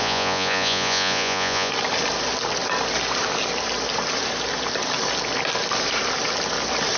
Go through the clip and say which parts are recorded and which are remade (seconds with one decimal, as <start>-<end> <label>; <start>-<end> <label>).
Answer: 0.0-1.7 remade; 1.7-7.0 recorded